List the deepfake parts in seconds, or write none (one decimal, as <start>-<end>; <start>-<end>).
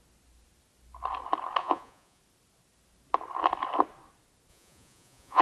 1.6-2.2; 4.5-5.4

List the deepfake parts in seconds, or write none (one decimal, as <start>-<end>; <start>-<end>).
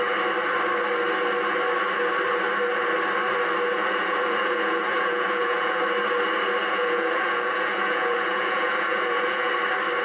3.7-5.8; 6.7-9.5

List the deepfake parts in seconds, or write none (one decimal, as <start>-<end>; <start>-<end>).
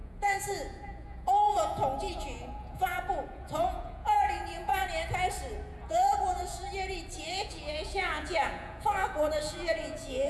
0.0-4.7; 5.8-6.6; 7.2-10.3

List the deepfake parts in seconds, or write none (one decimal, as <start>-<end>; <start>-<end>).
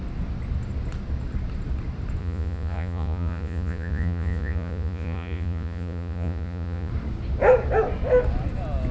2.2-6.9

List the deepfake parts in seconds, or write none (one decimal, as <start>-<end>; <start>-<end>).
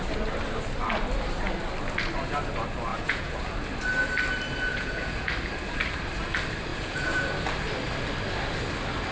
2.9-3.4; 4.7-5.3; 6.7-7.3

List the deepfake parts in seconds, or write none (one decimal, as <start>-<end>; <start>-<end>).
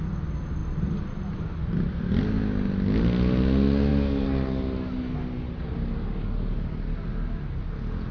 none